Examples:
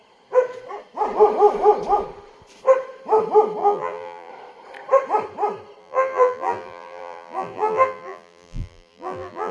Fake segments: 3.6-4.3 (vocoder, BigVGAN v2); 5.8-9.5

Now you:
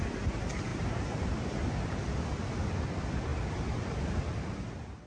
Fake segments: 0.7-1.3 (vocoder, BigVGAN v2); 3.3-4.1

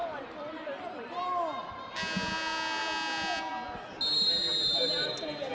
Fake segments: 0.0-0.9 (vocoder, BigVGAN v2)